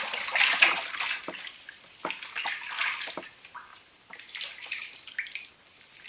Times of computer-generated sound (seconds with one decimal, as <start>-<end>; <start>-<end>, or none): 3.7-5.5